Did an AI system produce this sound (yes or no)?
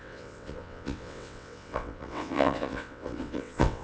yes